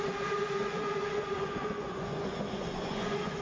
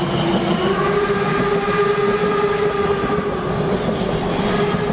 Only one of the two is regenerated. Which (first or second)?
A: first